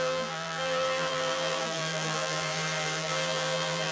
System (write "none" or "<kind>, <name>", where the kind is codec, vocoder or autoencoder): vocoder, BigVGAN v2